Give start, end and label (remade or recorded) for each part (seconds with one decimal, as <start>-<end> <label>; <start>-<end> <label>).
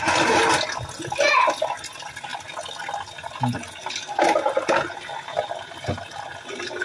0.0-6.8 recorded